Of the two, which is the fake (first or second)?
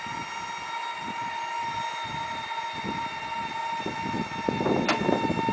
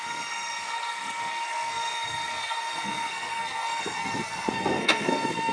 second